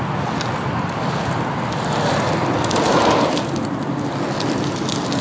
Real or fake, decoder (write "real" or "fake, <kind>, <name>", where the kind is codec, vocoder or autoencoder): real